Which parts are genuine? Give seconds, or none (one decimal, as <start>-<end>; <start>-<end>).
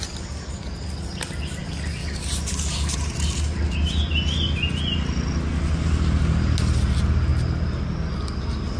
0.0-8.8